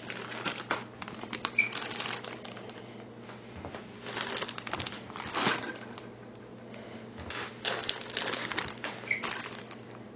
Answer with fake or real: real